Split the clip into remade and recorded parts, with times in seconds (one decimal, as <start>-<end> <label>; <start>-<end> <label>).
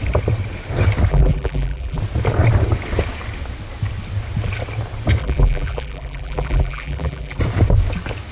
0.0-1.1 recorded; 1.1-2.0 remade; 2.0-5.2 recorded; 5.2-7.4 remade; 7.4-8.3 recorded